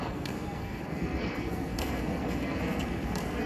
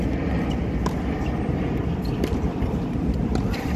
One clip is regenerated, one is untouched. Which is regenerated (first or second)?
first